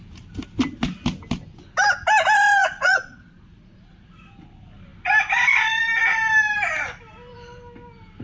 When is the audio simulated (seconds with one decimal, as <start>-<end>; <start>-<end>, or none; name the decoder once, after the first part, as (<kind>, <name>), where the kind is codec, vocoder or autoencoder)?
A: 2.6-4.3 (vocoder, Vocos)